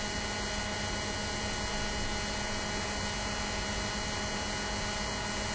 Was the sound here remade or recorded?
recorded